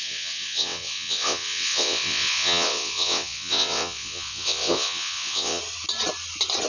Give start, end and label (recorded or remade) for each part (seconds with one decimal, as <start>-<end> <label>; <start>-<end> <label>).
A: 0.0-5.6 remade; 5.6-6.7 recorded